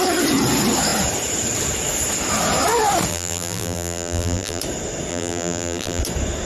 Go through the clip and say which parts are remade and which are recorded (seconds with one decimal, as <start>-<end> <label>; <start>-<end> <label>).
0.0-3.1 recorded; 3.1-4.6 remade; 4.6-5.1 recorded; 5.1-6.0 remade; 6.0-6.5 recorded

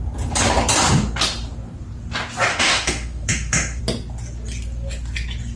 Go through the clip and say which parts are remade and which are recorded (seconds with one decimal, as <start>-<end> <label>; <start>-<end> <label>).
0.0-2.5 recorded; 2.5-3.8 remade; 3.8-5.6 recorded

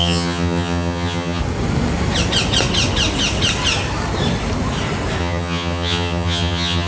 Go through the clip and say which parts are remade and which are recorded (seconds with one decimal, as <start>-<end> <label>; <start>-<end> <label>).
0.0-1.4 remade; 1.4-5.2 recorded; 5.2-6.9 remade

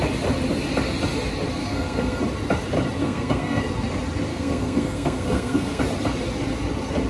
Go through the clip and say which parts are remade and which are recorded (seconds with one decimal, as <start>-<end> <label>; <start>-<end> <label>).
0.0-1.6 recorded; 1.6-2.2 remade; 2.2-3.0 recorded; 3.0-3.6 remade; 3.6-4.3 recorded; 4.3-5.8 remade; 5.8-7.1 recorded